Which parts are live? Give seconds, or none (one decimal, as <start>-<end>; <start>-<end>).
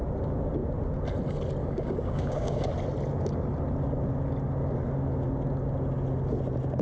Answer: 0.0-1.6; 2.7-6.8